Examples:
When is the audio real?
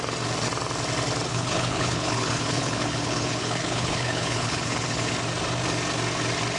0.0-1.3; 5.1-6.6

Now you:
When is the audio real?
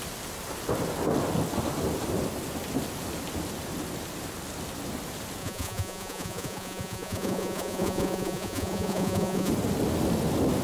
0.0-5.4; 9.5-10.6